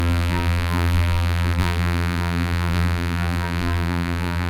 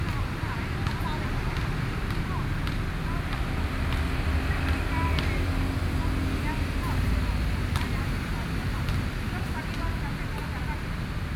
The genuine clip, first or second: second